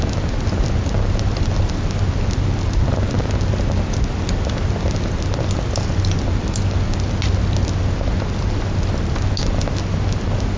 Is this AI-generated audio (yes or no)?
no